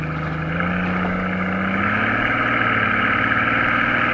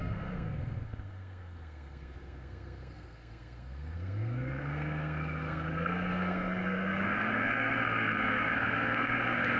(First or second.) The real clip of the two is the first